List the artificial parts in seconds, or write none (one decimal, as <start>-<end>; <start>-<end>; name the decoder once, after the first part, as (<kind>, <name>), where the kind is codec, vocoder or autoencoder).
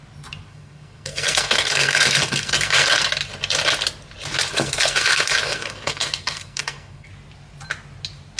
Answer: 0.5-3.1 (codec, SNAC); 4.5-7.1